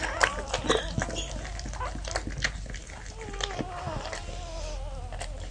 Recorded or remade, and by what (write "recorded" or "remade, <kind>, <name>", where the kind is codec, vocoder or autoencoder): recorded